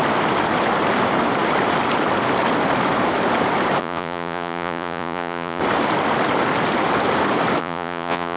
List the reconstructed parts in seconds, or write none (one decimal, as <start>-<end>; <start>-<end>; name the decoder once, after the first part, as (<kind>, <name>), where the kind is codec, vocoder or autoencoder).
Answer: 3.8-5.6 (vocoder, Vocos); 7.6-8.4

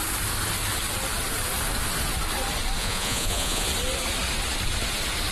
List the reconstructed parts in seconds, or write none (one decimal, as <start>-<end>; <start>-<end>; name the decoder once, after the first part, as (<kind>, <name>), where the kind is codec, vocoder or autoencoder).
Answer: 2.8-3.7 (vocoder, Vocos)

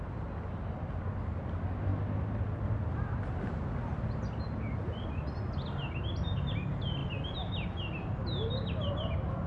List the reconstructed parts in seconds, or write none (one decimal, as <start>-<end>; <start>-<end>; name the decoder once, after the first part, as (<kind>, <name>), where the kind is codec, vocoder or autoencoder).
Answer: none

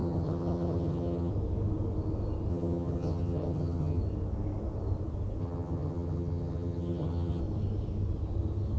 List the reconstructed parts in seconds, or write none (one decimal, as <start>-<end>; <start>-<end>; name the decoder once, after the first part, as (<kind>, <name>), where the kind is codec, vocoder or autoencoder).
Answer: 0.0-1.3 (vocoder, HiFi-GAN); 2.5-4.0; 5.4-7.4

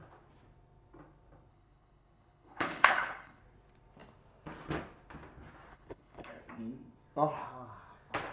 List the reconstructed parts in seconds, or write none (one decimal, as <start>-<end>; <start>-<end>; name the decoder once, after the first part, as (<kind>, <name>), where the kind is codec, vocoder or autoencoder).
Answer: 1.5-3.4 (codec, HILCodec); 5.7-6.4

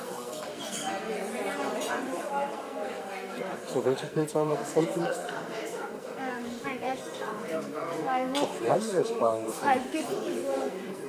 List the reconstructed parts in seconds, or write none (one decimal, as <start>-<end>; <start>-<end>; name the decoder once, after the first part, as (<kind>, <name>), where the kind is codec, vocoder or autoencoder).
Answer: 0.0-1.3 (codec, SNAC); 1.9-11.1

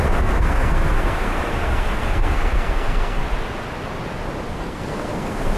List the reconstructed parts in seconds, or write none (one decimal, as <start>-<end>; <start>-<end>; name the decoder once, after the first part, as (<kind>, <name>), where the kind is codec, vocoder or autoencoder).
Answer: 0.0-3.2 (codec, SNAC); 4.5-5.6

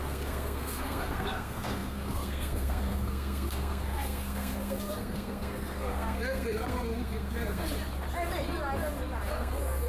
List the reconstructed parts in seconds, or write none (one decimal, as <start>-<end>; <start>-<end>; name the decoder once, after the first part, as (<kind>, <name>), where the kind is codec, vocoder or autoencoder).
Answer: 0.0-7.6 (codec, SNAC); 9.3-9.9